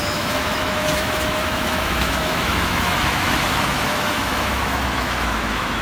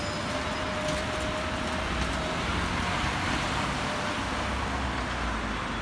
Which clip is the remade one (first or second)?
first